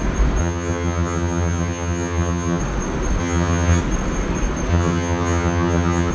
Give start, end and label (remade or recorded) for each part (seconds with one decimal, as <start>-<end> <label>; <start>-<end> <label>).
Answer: 0.0-0.4 recorded; 0.4-2.6 remade; 2.6-3.2 recorded; 3.2-3.8 remade; 3.8-4.7 recorded; 4.7-6.1 remade